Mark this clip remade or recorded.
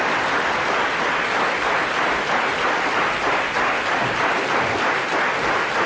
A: recorded